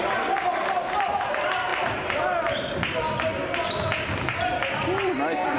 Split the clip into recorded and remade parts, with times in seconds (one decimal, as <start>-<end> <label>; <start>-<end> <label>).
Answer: 0.0-5.6 recorded